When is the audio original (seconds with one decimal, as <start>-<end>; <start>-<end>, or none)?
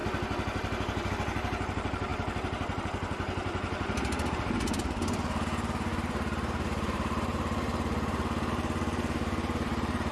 0.0-1.1